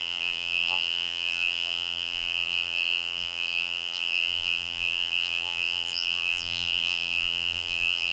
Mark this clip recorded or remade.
remade